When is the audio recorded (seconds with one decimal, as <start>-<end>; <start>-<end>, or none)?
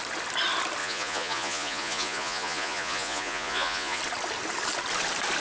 0.0-0.8; 4.0-5.4